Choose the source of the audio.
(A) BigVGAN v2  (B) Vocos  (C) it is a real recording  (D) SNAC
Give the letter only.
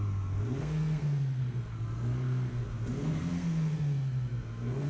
D